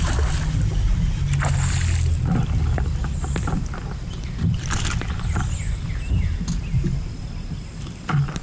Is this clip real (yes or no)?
yes